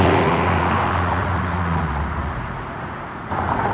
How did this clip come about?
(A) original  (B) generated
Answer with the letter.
B